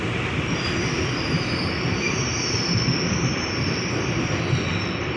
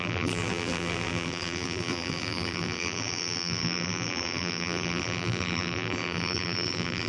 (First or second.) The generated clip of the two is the second